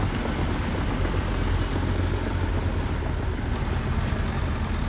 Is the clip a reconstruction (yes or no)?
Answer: no